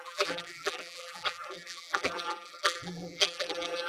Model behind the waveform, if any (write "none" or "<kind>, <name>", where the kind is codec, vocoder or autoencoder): vocoder, BigVGAN v2